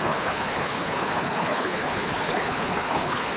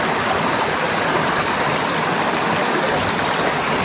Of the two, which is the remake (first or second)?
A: first